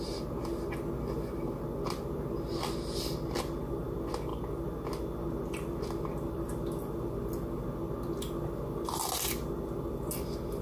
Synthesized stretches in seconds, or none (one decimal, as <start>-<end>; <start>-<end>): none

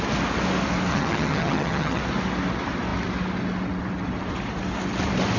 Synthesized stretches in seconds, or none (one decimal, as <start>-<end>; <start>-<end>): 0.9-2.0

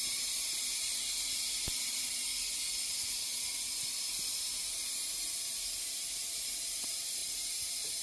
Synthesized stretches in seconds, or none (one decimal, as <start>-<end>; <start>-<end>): 0.0-2.3; 6.7-8.0